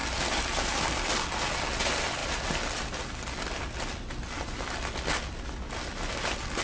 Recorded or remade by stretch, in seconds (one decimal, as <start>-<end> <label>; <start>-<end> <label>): 0.0-6.6 recorded

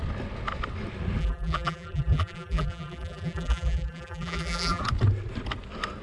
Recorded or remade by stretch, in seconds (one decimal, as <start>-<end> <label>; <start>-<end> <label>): 0.0-1.2 recorded; 1.2-4.8 remade; 4.8-6.0 recorded

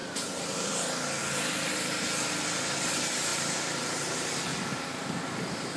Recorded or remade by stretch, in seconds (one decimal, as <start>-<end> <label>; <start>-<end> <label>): 0.0-0.7 remade; 0.7-3.3 recorded; 3.3-5.2 remade; 5.2-5.8 recorded

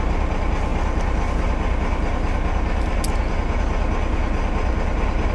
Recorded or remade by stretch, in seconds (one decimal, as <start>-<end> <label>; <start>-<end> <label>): 0.0-5.3 recorded